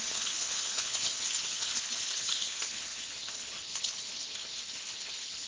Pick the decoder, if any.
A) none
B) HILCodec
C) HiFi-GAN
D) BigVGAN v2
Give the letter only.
B